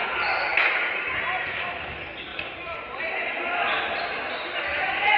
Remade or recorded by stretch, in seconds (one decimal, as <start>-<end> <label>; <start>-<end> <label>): 0.0-5.2 recorded